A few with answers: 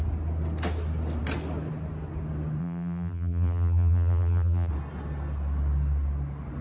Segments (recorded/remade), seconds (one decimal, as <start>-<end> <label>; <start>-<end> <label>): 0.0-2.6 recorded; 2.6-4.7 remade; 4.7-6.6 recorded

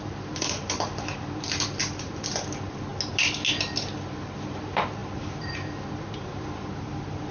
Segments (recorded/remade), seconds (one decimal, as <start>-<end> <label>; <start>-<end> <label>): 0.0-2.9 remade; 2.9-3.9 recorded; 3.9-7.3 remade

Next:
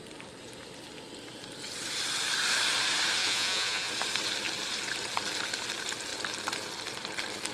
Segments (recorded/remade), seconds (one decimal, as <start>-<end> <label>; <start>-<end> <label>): 0.0-3.2 recorded; 3.2-3.9 remade; 3.9-7.5 recorded

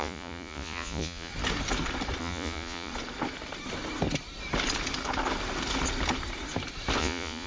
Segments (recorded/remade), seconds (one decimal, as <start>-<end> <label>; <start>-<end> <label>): 0.0-1.3 remade; 1.3-2.2 recorded; 2.2-2.9 remade; 2.9-7.0 recorded; 7.0-7.5 remade

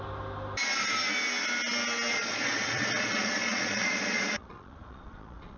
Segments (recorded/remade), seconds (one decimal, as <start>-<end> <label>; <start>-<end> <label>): 0.0-2.1 recorded; 2.1-5.6 remade

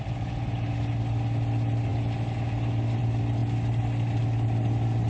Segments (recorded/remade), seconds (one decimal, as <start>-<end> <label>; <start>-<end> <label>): 0.0-5.1 recorded

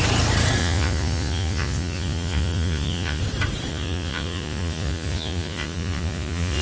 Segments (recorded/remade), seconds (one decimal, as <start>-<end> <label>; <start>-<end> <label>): 0.0-0.6 recorded; 0.6-3.2 remade; 3.2-3.7 recorded; 3.7-6.6 remade